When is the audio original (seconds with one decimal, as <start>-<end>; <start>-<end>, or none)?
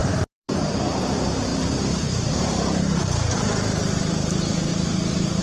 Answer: none